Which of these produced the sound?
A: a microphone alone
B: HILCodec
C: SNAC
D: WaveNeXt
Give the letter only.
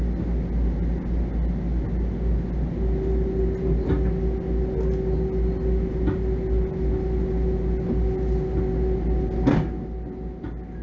A